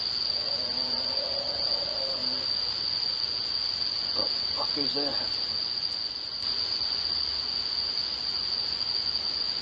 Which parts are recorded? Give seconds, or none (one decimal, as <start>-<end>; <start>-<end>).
2.2-2.8